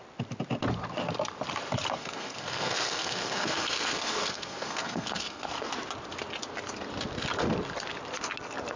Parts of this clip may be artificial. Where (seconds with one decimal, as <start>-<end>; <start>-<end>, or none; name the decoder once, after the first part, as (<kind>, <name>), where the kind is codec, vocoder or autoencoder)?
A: 2.0-5.7 (codec, SNAC)